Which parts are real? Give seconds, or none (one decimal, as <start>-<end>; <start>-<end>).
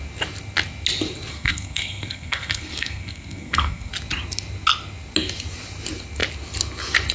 0.0-1.3; 3.9-7.1